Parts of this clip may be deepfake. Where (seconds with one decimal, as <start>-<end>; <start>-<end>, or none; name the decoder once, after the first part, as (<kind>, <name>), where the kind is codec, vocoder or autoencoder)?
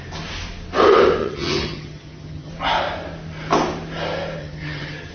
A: 1.2-2.5 (vocoder, HiFi-GAN); 4.4-5.1